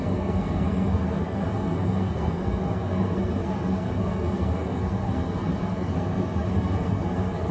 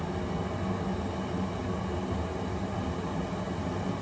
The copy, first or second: first